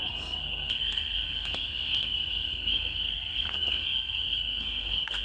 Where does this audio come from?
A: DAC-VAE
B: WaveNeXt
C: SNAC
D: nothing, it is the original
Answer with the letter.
C